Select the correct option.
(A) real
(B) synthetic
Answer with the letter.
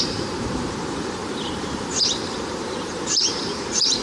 B